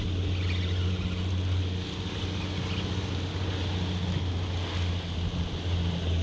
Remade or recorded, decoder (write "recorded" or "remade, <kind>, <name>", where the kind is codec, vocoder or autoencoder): recorded